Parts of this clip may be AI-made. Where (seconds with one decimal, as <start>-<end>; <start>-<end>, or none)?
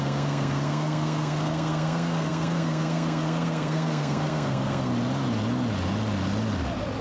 0.0-4.9